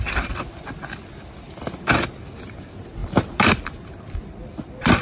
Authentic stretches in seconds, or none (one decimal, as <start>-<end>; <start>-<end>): 0.0-3.0